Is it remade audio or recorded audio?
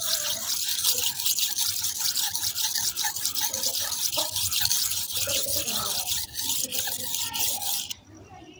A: recorded